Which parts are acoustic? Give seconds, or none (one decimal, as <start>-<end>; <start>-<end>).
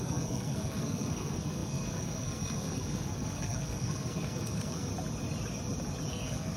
4.9-6.1